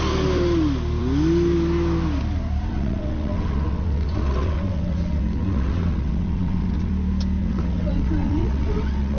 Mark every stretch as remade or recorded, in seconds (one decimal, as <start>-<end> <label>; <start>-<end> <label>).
0.0-2.7 recorded; 2.7-6.9 remade; 6.9-7.4 recorded; 7.4-9.2 remade